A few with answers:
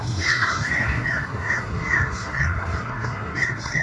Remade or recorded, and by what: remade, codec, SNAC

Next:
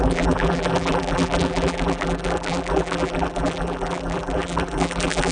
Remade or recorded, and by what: remade, vocoder, BigVGAN v2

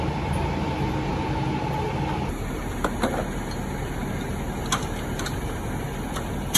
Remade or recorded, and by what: recorded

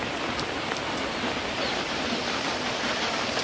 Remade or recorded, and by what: remade, vocoder, BigVGAN v2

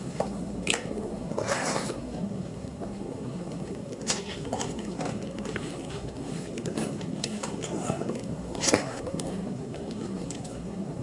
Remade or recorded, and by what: remade, codec, SNAC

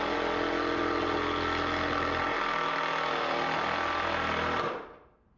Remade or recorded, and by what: recorded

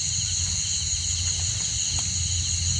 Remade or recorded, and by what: recorded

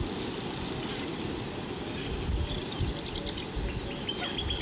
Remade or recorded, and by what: recorded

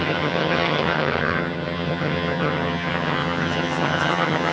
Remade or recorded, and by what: remade, vocoder, HiFi-GAN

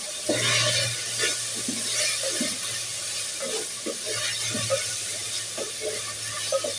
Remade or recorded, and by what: recorded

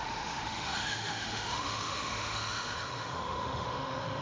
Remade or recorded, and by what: remade, autoencoder, DAC-VAE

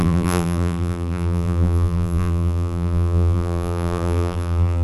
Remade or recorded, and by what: remade, vocoder, BigVGAN v2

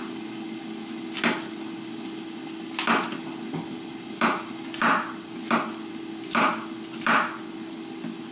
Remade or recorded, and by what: recorded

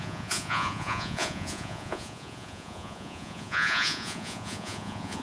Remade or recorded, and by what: remade, vocoder, Vocos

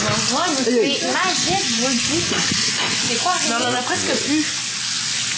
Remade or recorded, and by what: recorded